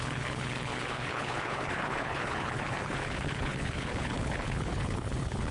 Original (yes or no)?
no